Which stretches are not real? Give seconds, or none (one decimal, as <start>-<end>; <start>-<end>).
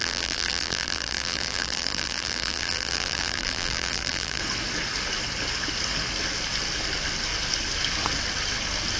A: 0.0-4.4